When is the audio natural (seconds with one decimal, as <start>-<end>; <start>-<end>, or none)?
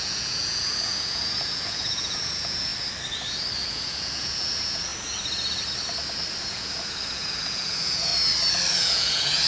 2.7-3.7; 4.9-6.5; 8.1-8.7